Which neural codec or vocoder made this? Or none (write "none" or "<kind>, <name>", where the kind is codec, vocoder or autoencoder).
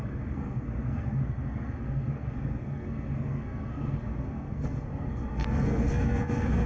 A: codec, SNAC